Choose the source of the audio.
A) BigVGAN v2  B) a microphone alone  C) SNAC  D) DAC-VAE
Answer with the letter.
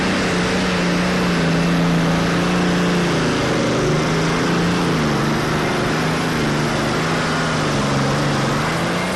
B